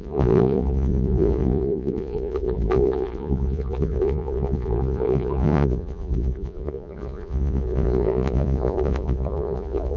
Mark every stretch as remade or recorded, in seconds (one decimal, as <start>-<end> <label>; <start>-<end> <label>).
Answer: 0.0-10.0 remade